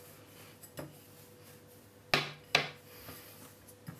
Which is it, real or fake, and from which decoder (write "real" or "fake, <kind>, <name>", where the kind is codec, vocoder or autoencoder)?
real